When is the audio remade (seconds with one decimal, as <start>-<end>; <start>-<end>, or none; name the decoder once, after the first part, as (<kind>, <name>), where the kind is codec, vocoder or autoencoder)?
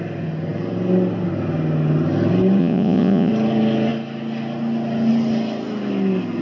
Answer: 2.6-3.3 (vocoder, Vocos)